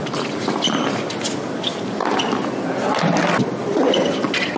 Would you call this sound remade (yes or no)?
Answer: no